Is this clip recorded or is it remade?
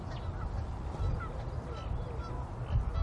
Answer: recorded